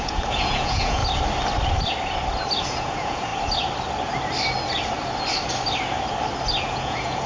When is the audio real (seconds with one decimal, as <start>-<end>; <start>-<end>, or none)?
1.0-2.6; 3.3-6.6